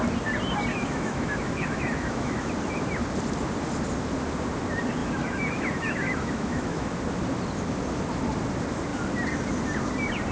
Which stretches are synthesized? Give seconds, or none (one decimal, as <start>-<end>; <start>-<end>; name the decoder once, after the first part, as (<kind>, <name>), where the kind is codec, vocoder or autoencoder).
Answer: 0.7-2.5 (autoencoder, DAC-VAE); 5.0-7.0